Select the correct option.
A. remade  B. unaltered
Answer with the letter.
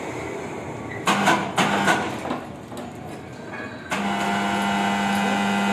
B